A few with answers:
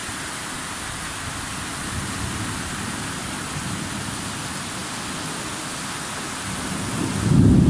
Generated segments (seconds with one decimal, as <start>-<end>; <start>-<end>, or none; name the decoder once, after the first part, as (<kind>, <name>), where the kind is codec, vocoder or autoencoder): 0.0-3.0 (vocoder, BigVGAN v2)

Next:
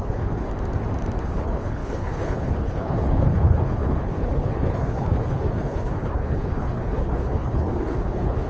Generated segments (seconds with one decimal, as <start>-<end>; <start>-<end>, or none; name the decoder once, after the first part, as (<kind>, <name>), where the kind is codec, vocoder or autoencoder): 0.0-0.5 (codec, HILCodec); 1.2-8.5

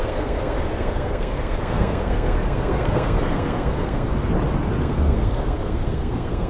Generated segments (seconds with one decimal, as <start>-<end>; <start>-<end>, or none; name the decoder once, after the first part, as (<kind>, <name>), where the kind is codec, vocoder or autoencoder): 0.0-4.1 (codec, SNAC); 4.8-6.5